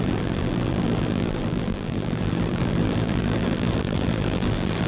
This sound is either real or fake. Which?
fake